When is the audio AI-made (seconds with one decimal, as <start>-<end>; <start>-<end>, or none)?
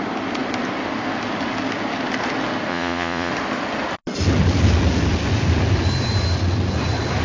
2.7-3.3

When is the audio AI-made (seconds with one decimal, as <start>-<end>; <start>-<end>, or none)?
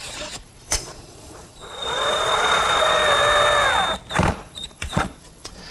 0.0-3.0; 4.3-5.7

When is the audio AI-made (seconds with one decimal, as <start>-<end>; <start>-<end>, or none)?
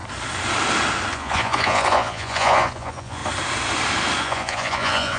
1.1-3.2; 4.2-5.2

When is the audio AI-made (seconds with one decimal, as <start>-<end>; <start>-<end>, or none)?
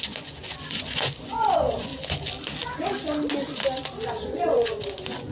0.0-1.9; 4.1-5.3